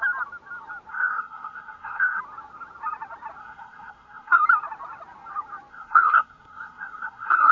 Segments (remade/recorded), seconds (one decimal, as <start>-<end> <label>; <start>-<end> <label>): 0.0-0.9 recorded; 0.9-2.2 remade; 2.2-3.4 recorded; 3.4-4.4 remade; 4.4-5.7 recorded; 5.7-7.5 remade